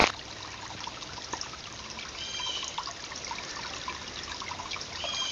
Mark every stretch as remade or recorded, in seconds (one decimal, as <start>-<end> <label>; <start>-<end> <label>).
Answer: 0.0-5.3 recorded